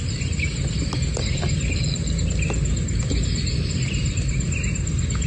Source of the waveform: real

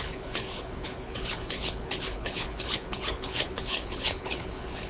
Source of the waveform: fake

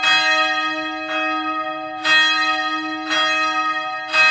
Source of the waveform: real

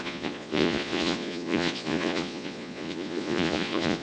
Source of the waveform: fake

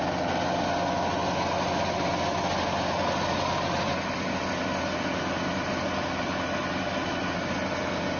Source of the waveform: real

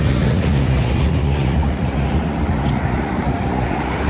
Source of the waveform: fake